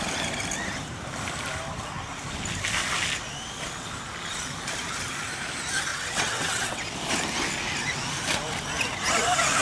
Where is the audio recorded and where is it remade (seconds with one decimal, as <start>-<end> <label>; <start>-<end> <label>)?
0.0-5.9 recorded; 5.9-6.8 remade; 6.8-9.6 recorded